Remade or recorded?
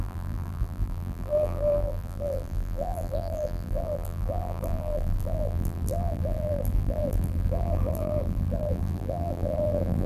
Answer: remade